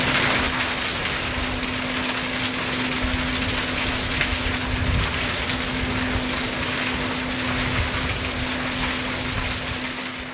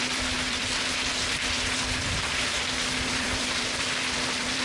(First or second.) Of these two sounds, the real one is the first